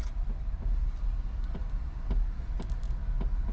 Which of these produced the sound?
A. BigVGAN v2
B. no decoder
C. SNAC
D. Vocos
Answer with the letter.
B